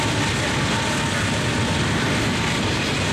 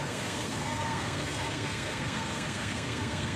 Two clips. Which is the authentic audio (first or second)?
first